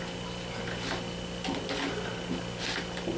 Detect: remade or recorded recorded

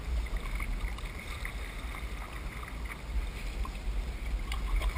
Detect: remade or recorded recorded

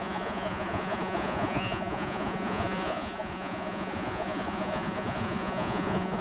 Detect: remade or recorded remade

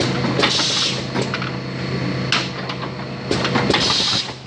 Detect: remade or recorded recorded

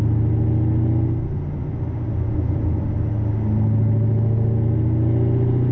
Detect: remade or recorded recorded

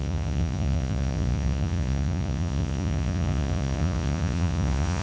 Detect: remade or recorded remade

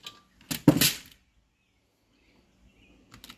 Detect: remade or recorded recorded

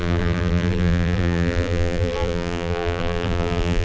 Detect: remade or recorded remade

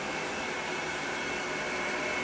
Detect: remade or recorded recorded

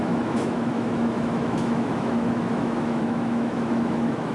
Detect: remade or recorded remade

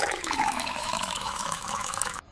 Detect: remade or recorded remade